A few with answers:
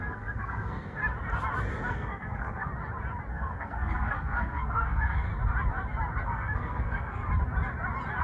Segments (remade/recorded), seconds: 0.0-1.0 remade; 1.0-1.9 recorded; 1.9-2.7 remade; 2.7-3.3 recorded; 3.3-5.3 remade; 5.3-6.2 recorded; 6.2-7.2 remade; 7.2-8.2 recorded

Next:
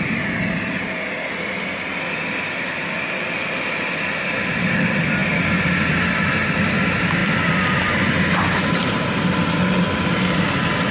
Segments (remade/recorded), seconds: 0.0-10.9 recorded

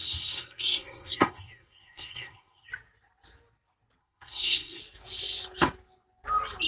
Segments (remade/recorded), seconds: 0.0-2.7 remade; 2.7-4.0 recorded; 4.0-4.8 remade; 4.8-6.7 recorded

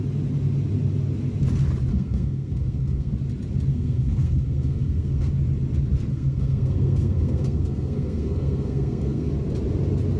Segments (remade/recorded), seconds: 0.0-1.9 recorded; 1.9-3.1 remade; 3.1-3.7 recorded; 3.7-5.3 remade; 5.3-6.1 recorded; 6.1-9.3 remade; 9.3-10.2 recorded

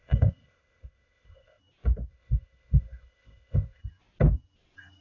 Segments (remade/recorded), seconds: 0.0-1.6 remade; 1.6-2.1 recorded; 2.1-3.8 remade; 3.8-5.0 recorded